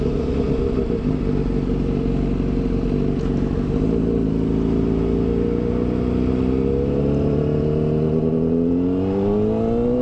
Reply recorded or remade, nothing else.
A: recorded